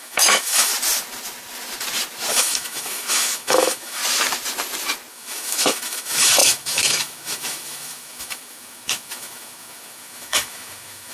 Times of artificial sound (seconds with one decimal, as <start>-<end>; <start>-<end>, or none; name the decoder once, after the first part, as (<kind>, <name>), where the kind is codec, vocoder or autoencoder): 0.0-0.7 (autoencoder, DAC-VAE); 2.3-4.0; 5.1-11.1